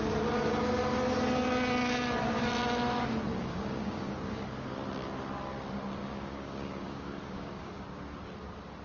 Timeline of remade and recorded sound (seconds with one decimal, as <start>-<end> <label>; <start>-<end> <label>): 0.0-3.3 recorded; 3.3-4.7 remade; 4.7-6.0 recorded; 6.0-7.8 remade; 7.8-8.8 recorded